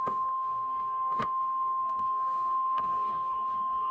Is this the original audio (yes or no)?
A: no